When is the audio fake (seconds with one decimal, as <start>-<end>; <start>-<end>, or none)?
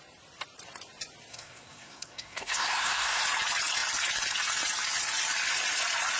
1.3-3.2